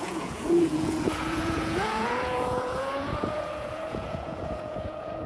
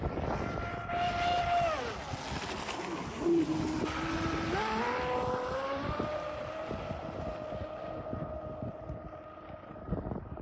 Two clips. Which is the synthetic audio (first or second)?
first